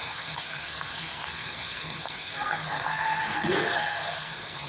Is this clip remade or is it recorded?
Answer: remade